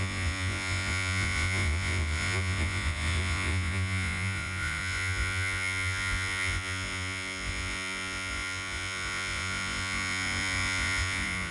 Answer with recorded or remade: remade